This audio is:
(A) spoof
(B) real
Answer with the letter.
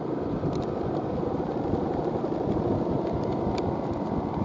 B